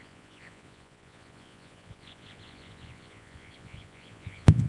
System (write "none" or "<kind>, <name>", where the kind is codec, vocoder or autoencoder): vocoder, Vocos